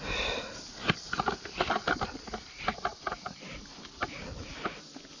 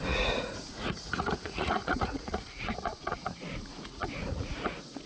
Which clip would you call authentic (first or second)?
first